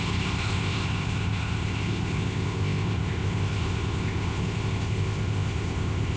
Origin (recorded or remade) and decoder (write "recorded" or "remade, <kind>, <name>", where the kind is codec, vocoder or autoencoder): remade, codec, ZipCodec